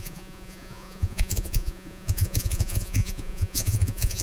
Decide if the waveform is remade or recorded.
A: remade